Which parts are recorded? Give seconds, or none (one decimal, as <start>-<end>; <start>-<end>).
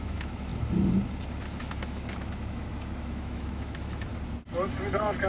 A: 0.5-1.6; 4.1-5.3